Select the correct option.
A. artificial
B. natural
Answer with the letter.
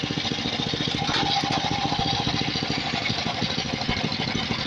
B